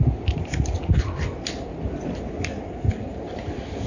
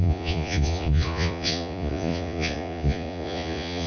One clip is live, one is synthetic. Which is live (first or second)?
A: first